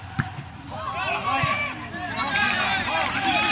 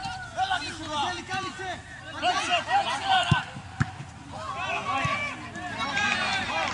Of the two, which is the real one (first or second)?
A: second